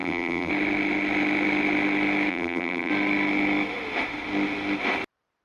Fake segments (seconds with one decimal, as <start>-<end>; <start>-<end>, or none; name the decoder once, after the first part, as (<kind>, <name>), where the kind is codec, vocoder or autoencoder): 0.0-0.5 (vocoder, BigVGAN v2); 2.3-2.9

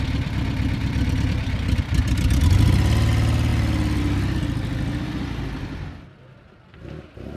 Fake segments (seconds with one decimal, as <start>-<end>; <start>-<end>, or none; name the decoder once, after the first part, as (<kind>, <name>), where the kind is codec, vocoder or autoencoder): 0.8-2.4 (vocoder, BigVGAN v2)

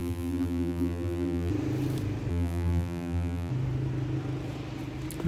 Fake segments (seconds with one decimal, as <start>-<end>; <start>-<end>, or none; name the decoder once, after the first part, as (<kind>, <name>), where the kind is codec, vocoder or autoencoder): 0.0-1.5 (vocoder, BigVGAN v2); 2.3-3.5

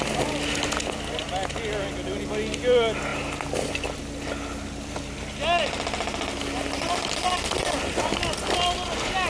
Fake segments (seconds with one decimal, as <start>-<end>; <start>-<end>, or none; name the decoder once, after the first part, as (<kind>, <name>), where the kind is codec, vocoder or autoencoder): none

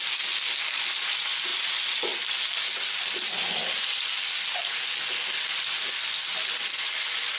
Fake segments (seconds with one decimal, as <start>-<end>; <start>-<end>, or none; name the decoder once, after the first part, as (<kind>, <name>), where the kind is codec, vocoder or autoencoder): none

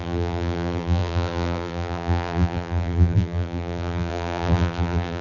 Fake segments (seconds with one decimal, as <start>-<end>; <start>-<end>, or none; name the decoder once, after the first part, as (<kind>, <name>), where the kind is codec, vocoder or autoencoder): 0.0-5.2 (vocoder, BigVGAN v2)

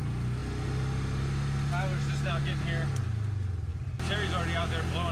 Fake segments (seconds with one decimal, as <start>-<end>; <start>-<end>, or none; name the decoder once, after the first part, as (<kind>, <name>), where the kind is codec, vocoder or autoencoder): none

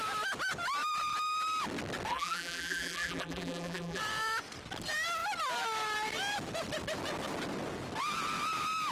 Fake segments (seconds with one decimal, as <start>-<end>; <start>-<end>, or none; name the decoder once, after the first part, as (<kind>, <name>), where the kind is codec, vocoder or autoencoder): 2.1-4.0 (vocoder, BigVGAN v2)